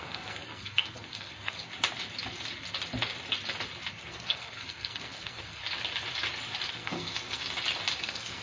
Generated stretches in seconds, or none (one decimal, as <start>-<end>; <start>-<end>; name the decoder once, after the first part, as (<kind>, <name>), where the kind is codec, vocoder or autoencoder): 0.0-1.7 (codec, SNAC); 3.9-5.6; 6.7-7.4; 8.0-8.4